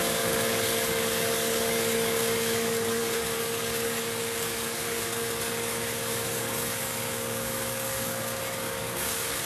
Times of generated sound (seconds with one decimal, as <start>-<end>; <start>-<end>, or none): 0.0-9.5